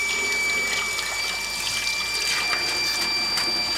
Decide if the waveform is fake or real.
real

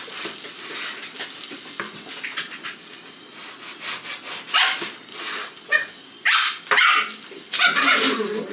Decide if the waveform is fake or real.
real